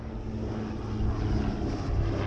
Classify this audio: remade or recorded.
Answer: recorded